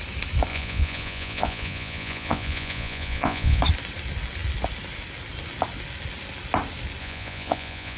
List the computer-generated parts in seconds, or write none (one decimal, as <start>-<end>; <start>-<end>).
0.5-3.6; 7.0-8.0